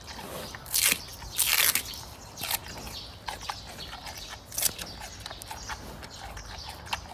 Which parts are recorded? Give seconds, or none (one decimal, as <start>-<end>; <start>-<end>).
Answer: 2.6-6.2